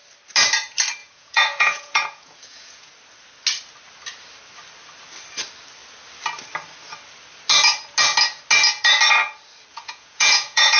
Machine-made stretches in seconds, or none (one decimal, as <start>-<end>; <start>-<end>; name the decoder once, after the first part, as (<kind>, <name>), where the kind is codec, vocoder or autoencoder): 1.0-2.9 (vocoder, Vocos); 9.7-10.8